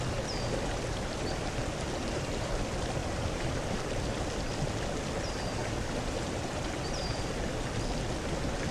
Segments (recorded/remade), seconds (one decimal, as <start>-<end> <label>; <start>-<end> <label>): 0.0-2.0 recorded; 2.0-2.5 remade; 2.5-3.0 recorded; 3.0-3.8 remade; 3.8-5.6 recorded; 5.6-7.5 remade; 7.5-8.7 recorded